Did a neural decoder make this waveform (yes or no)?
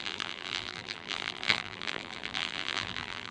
yes